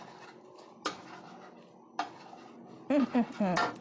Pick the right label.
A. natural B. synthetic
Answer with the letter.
A